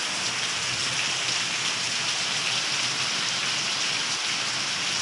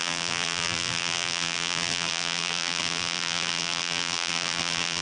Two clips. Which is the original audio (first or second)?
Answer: first